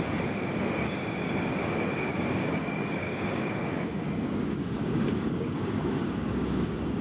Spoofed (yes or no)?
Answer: yes